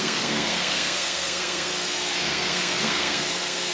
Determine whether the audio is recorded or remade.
remade